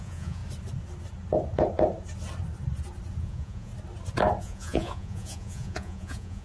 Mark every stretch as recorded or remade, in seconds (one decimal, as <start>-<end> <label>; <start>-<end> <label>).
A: 0.0-0.4 remade; 0.4-3.2 recorded; 3.2-3.7 remade; 3.7-4.4 recorded; 4.4-6.4 remade